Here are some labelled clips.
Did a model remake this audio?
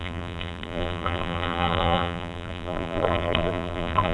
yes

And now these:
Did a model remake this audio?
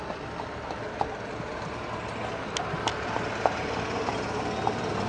no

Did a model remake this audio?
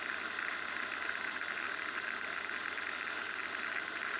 no